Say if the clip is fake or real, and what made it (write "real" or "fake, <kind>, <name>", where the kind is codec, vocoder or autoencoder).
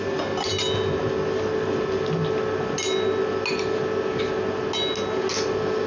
real